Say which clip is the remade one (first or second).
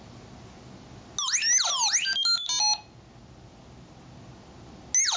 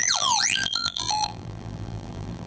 second